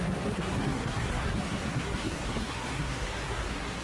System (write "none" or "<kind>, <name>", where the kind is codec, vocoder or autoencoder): codec, SNAC